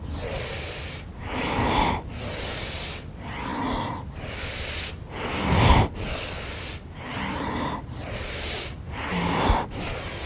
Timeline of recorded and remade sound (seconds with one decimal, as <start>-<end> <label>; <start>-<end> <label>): 0.0-3.5 recorded; 3.5-4.9 remade; 4.9-10.3 recorded